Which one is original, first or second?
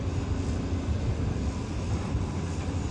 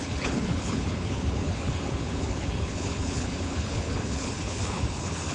first